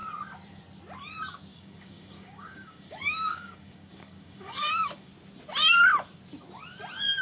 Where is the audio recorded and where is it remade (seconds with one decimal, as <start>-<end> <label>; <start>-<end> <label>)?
0.0-1.5 recorded; 1.5-5.1 remade; 5.1-7.2 recorded